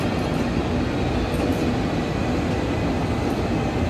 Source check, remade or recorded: recorded